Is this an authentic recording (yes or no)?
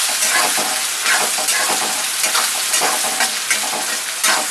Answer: yes